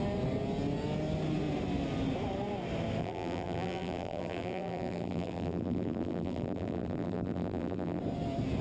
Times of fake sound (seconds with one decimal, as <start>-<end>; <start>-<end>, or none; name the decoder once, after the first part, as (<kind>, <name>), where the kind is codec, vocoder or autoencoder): 3.0-8.0 (vocoder, BigVGAN v2)